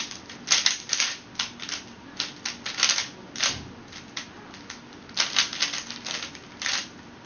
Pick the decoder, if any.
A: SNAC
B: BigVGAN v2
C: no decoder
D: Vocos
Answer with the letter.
C